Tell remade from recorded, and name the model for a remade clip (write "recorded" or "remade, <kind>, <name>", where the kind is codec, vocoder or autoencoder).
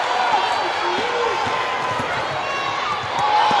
recorded